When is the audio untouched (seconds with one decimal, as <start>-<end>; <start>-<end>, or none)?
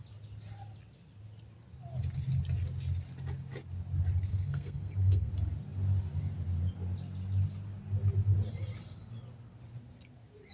0.0-4.3; 5.3-10.5